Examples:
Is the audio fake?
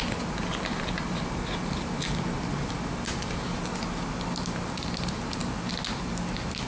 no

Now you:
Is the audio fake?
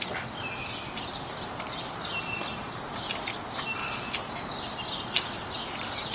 no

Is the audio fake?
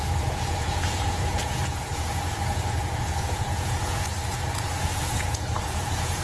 yes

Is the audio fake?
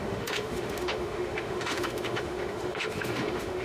yes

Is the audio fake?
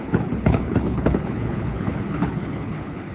yes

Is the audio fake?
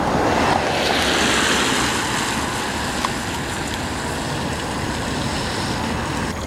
no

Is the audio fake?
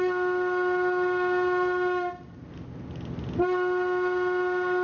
no